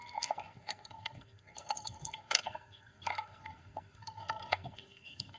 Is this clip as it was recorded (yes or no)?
no